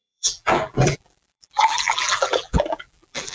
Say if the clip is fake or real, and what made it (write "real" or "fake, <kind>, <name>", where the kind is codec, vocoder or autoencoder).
fake, vocoder, BigVGAN v2